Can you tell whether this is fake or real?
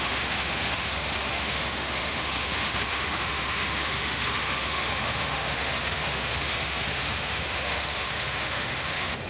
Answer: fake